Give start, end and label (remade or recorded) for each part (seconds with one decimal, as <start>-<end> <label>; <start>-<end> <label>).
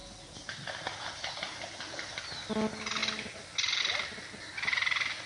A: 0.0-5.3 recorded